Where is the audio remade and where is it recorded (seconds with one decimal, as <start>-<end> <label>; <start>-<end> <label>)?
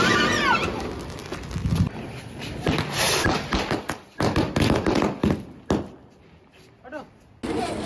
0.0-7.9 recorded